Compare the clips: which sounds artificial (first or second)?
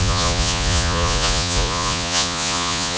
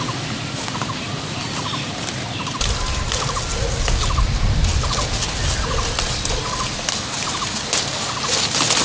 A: first